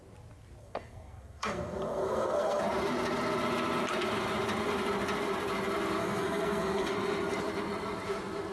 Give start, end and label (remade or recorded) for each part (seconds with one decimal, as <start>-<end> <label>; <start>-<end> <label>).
0.0-0.6 recorded; 0.6-2.6 remade; 2.6-6.0 recorded; 6.0-6.9 remade; 6.9-8.5 recorded